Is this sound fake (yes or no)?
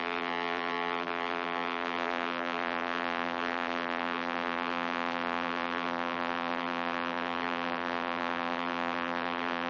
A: yes